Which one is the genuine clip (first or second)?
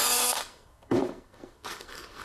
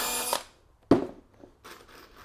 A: second